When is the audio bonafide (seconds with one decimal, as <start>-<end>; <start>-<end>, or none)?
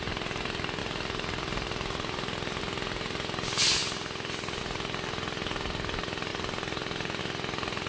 0.0-0.8; 2.6-7.9